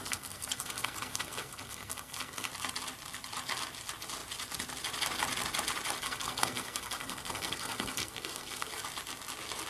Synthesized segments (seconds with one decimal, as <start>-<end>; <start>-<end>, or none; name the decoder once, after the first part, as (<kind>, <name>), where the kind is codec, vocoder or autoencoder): 0.0-2.5 (codec, SNAC); 6.0-8.7